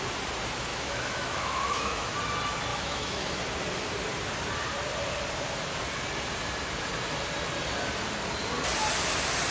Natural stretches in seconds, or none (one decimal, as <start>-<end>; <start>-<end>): 0.0-0.7; 2.1-2.7; 3.4-9.5